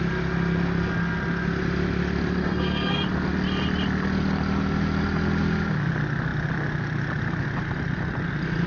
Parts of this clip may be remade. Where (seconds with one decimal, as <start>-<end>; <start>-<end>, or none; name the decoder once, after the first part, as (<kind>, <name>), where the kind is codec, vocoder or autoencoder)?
2.4-3.0 (codec, SNAC)

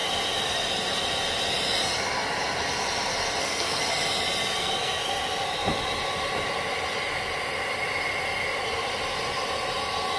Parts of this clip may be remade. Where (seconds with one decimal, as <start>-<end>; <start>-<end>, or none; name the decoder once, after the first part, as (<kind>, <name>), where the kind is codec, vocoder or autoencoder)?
3.4-3.8 (codec, SNAC); 4.6-5.0